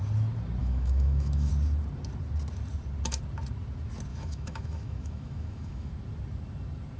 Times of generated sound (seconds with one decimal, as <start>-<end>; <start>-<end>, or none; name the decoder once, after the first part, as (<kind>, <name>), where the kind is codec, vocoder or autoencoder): 0.6-1.5 (autoencoder, DAC-VAE); 4.1-5.9